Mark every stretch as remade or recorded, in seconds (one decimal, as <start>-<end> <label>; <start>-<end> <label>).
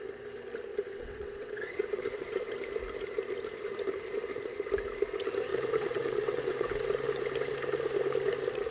0.0-0.7 recorded; 0.7-2.5 remade; 2.5-5.5 recorded; 5.5-6.8 remade; 6.8-8.7 recorded